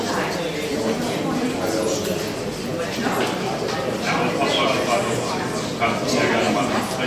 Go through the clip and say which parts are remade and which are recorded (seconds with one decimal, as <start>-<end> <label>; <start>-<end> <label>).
0.0-7.1 recorded